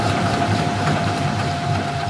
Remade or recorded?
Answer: remade